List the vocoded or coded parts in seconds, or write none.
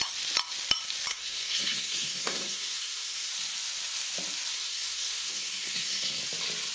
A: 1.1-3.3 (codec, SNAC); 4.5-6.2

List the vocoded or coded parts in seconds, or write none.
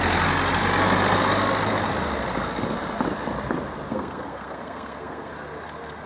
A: 3.9-5.3 (codec, SNAC)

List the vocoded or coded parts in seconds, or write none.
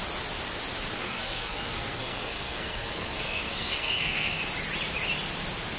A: 1.0-4.4 (codec, SNAC)